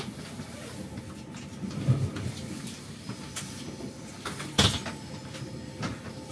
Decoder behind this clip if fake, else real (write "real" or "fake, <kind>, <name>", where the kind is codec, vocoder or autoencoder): real